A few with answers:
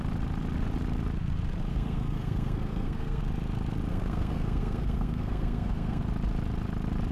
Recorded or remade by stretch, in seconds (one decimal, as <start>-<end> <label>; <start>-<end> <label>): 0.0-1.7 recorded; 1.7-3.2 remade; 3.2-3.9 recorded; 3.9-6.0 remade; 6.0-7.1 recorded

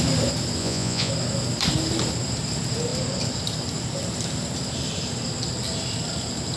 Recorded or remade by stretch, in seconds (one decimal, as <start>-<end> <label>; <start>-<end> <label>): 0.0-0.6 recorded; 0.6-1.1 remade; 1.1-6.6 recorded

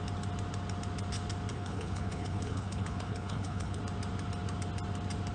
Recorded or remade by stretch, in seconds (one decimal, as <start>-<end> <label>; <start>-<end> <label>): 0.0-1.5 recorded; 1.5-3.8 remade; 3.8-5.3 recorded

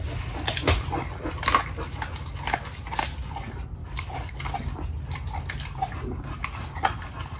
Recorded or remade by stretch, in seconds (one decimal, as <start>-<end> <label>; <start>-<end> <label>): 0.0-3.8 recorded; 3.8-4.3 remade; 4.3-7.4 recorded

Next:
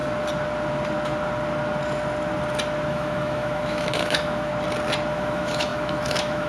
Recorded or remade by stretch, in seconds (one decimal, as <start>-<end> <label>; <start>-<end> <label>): 0.0-2.9 recorded; 2.9-4.5 remade; 4.5-5.1 recorded; 5.1-6.5 remade

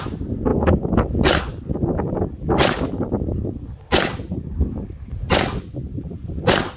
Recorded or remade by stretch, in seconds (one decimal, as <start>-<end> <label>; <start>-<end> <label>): 0.0-0.5 recorded; 0.5-1.4 remade; 1.4-6.8 recorded

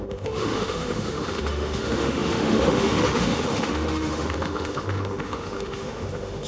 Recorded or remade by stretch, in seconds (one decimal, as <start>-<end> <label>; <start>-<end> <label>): 0.0-6.5 remade

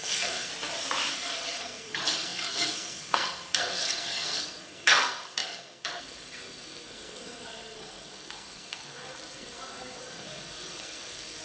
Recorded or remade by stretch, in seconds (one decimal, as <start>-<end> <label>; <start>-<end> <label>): 0.0-0.5 remade; 0.5-1.1 recorded; 1.1-11.4 remade